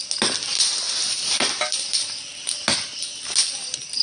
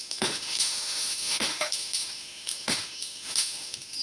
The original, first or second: first